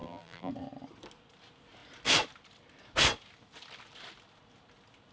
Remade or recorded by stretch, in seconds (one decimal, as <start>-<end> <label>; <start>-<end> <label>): 0.0-0.5 remade; 0.5-5.1 recorded